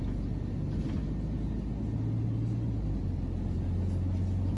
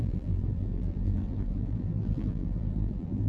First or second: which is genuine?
first